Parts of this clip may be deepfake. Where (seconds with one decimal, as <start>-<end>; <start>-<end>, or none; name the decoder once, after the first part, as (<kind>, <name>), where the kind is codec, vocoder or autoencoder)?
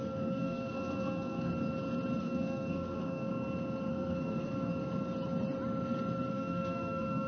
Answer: 0.0-1.5 (codec, SNAC); 2.2-3.3; 3.9-4.7; 6.3-7.3